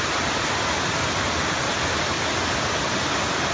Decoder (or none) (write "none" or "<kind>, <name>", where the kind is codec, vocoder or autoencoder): none